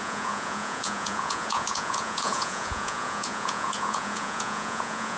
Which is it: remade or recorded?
remade